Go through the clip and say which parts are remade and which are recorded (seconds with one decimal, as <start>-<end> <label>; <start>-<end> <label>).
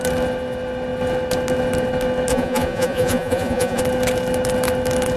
0.0-2.3 recorded; 2.3-3.8 remade; 3.8-5.2 recorded